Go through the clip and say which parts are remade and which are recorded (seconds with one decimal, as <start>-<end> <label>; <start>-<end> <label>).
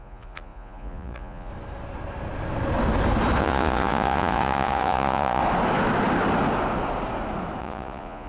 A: 0.0-1.5 remade; 1.5-3.4 recorded; 3.4-5.4 remade; 5.4-7.6 recorded; 7.6-8.3 remade